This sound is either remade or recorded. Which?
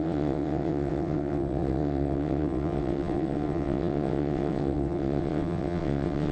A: remade